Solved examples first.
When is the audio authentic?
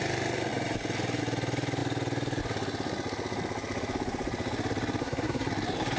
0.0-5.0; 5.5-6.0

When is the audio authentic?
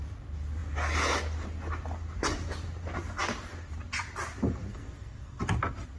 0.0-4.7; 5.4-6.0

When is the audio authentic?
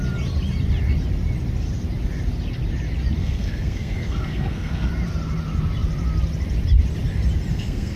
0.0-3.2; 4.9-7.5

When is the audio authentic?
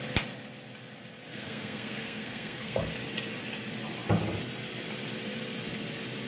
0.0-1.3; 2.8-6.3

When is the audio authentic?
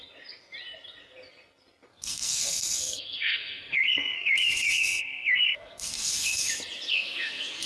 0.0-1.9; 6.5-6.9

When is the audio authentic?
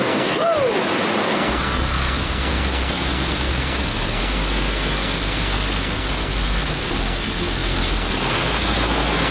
0.5-1.2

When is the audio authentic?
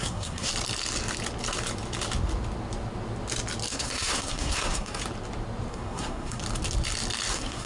0.5-3.7; 5.0-5.7; 6.4-7.3